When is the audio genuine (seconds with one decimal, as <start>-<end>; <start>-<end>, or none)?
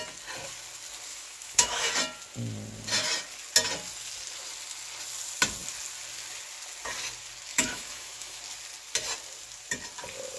0.0-1.1; 1.9-7.5; 8.4-10.4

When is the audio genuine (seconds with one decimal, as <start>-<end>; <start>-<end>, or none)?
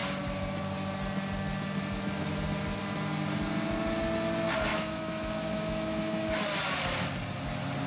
0.0-4.7; 6.3-7.9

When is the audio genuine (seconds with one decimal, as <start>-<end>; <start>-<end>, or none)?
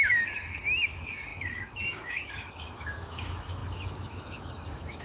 none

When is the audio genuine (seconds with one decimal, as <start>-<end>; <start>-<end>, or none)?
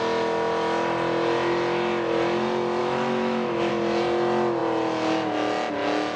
0.0-2.8; 3.7-6.2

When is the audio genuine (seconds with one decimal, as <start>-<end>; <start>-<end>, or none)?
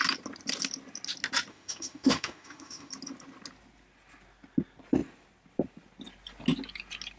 0.0-1.5; 2.9-7.2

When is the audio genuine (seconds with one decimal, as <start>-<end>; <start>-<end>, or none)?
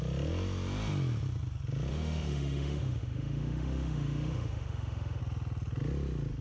0.0-1.9; 5.2-6.4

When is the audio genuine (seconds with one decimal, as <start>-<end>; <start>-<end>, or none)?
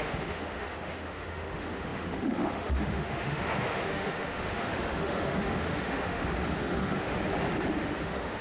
7.3-7.8